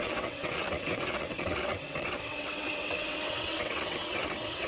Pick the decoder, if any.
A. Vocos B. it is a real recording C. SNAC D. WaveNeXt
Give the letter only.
D